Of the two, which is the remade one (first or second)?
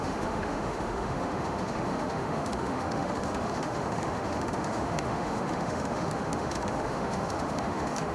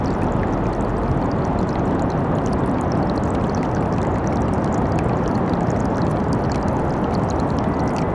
first